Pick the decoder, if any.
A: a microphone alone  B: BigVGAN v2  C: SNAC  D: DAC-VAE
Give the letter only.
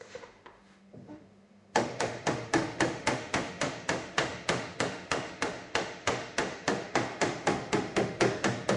D